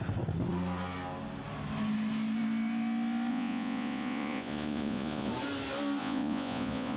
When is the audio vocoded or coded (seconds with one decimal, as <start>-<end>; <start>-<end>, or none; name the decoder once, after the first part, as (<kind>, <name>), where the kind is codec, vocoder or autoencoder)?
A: 3.3-5.3 (vocoder, Vocos); 6.0-7.0